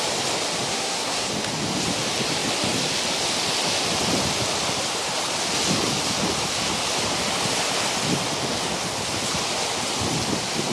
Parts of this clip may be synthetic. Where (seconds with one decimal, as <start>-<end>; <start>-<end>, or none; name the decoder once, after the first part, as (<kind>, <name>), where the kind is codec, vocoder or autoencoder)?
0.7-1.3 (codec, SNAC)